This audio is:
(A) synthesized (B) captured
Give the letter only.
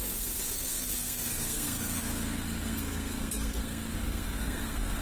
A